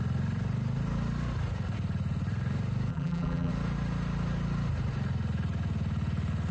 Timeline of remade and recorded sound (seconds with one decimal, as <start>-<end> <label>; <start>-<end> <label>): 0.0-2.9 recorded; 2.9-3.5 remade; 3.5-6.5 recorded